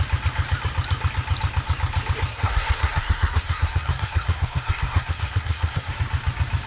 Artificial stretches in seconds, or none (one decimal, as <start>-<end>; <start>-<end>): 2.3-5.9